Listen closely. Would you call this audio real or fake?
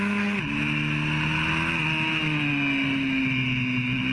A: real